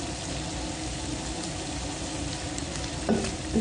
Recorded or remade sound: recorded